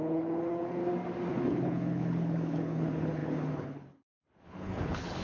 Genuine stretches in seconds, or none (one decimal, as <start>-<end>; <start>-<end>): 0.8-1.3